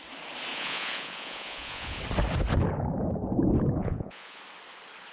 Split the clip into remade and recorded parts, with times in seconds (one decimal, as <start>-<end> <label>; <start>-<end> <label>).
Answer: 0.0-0.5 recorded; 0.5-2.0 remade; 2.0-3.8 recorded; 3.8-4.4 remade; 4.4-5.1 recorded